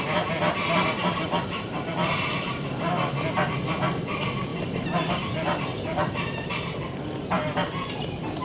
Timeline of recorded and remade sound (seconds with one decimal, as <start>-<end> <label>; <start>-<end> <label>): 0.0-1.0 recorded; 1.0-3.0 remade; 3.0-4.5 recorded; 4.5-5.1 remade; 5.1-5.7 recorded; 5.7-6.5 remade; 6.5-8.4 recorded